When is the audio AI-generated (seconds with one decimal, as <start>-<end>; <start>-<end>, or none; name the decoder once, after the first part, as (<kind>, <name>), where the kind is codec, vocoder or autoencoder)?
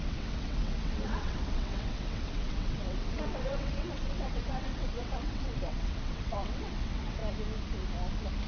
0.0-7.2 (vocoder, WaveNeXt)